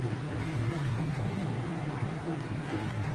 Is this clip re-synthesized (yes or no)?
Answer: yes